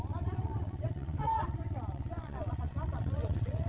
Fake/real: fake